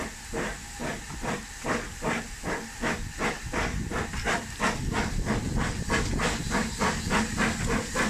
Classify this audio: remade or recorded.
recorded